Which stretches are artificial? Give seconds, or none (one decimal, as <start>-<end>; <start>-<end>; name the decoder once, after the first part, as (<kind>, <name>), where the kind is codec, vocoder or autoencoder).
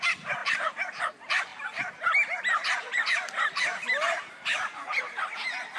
0.4-1.0 (vocoder, BigVGAN v2); 1.5-5.0